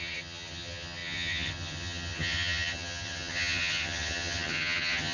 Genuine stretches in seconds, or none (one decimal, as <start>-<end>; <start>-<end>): none